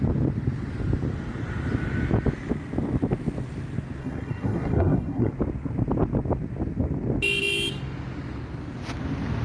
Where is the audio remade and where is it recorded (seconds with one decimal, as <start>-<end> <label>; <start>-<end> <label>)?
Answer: 0.0-4.0 recorded; 4.0-5.3 remade; 5.3-9.4 recorded